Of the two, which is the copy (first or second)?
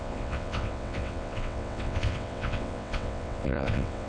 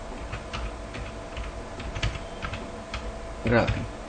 first